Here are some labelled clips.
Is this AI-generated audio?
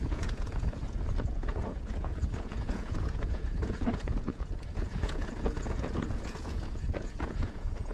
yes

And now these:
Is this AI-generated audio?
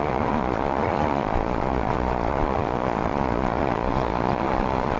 yes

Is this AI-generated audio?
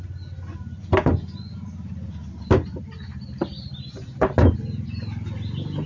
no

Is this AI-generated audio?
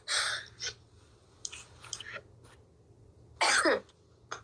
no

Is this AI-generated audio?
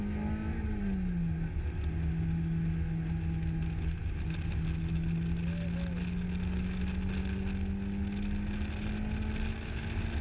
no